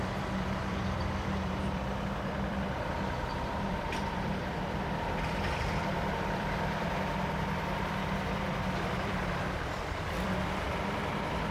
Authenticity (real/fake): fake